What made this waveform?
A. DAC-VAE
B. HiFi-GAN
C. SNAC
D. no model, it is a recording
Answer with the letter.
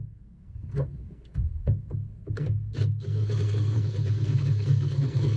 C